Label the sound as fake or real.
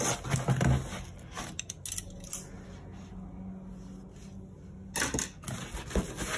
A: real